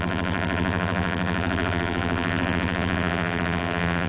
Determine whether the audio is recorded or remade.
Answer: remade